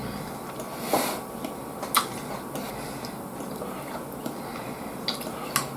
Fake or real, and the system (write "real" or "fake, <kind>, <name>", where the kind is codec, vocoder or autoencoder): real